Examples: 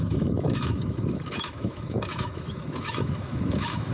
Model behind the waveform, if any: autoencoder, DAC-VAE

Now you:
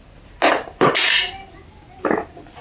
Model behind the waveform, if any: none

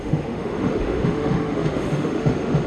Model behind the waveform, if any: autoencoder, DAC-VAE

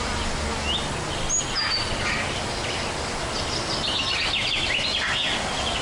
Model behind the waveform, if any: none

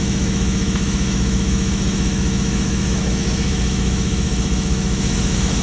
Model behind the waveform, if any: autoencoder, DAC-VAE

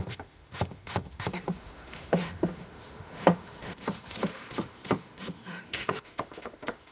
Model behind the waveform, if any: autoencoder, DAC-VAE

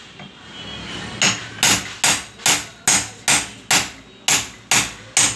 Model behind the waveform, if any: none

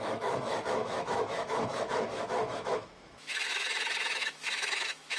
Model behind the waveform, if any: autoencoder, DAC-VAE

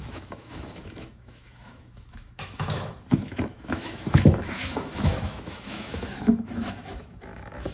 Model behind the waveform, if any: autoencoder, DAC-VAE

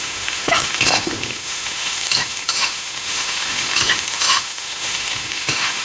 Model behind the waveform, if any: autoencoder, DAC-VAE